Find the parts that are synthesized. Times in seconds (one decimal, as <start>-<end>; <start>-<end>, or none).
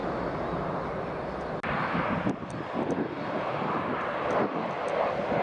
none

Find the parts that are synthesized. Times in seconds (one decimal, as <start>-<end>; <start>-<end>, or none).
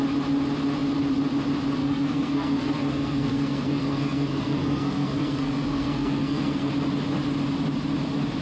1.8-6.7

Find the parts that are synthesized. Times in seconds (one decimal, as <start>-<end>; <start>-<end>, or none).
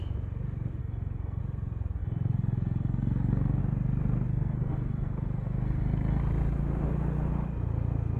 0.8-1.4; 2.0-3.6; 4.3-6.2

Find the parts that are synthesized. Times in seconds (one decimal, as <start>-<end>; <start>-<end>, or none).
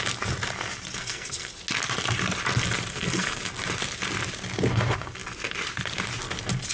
1.0-1.5; 2.9-3.5